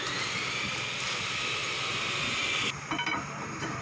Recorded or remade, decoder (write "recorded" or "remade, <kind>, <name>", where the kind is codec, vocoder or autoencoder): recorded